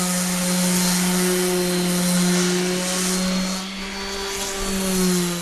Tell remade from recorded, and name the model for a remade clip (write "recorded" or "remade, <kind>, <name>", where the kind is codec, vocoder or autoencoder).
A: recorded